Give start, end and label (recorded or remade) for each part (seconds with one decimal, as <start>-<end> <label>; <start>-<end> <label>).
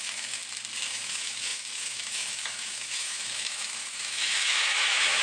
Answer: 0.0-0.4 remade; 0.4-0.9 recorded; 0.9-5.2 remade